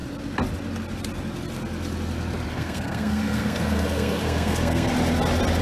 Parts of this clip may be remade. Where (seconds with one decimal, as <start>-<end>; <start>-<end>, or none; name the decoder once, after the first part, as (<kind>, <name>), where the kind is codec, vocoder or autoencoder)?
2.5-4.9 (codec, SNAC)